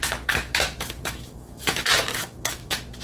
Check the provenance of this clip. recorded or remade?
remade